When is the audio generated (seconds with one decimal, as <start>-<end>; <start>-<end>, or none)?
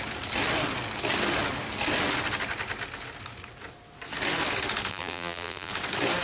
4.9-5.7